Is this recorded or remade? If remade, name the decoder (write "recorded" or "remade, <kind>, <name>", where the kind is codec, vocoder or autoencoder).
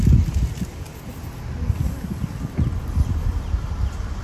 recorded